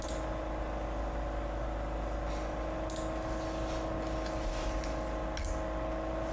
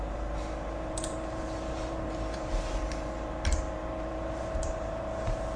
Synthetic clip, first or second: second